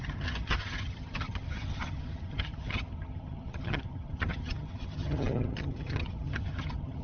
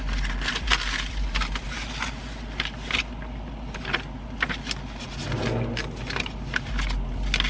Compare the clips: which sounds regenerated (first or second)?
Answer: first